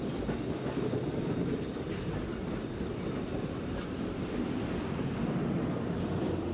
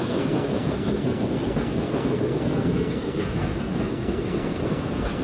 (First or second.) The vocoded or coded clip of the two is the second